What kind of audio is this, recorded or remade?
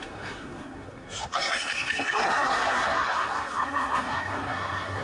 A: remade